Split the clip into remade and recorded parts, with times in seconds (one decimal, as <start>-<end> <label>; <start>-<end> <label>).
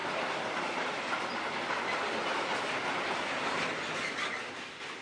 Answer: 0.0-5.0 recorded